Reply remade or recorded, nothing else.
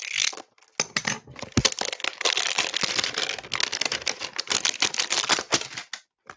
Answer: recorded